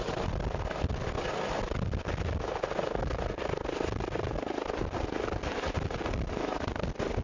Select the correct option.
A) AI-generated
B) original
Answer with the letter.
B